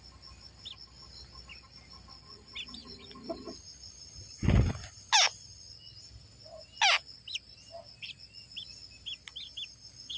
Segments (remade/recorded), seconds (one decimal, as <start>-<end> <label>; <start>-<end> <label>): 0.0-10.2 recorded